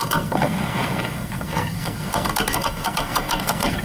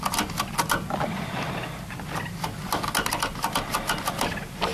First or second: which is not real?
first